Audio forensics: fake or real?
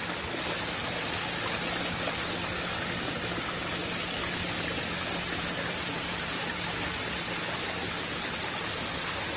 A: real